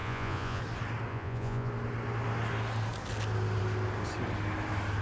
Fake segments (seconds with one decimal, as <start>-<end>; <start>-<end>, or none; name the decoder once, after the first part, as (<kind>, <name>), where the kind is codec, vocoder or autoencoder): 0.0-0.6 (vocoder, Vocos); 1.1-1.7